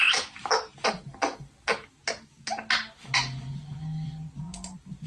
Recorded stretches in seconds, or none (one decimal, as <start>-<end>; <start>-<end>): 0.0-5.1